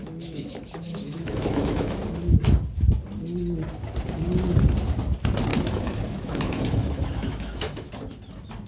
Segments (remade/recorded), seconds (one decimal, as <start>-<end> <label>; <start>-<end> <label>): 0.0-2.0 remade; 2.0-5.5 recorded; 5.5-7.9 remade; 7.9-8.7 recorded